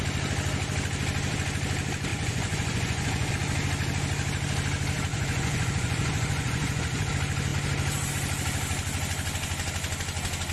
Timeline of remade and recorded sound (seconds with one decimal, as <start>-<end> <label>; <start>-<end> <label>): 0.0-2.1 recorded; 2.1-3.3 remade; 3.3-5.1 recorded; 5.1-7.1 remade; 7.1-10.5 recorded